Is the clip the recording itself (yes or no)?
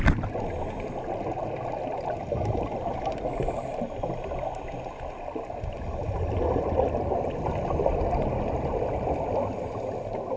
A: yes